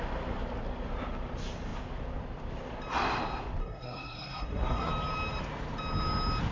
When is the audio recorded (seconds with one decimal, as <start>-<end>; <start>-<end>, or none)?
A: 0.0-3.6; 4.9-6.5